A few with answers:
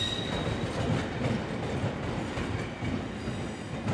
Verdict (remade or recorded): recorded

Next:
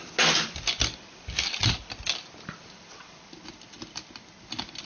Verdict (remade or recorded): recorded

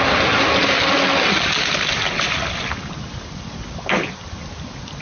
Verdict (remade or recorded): recorded